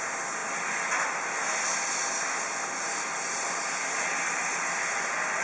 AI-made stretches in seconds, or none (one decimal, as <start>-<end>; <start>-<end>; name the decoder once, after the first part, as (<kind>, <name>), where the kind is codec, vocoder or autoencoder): none